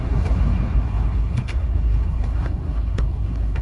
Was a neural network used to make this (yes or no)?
yes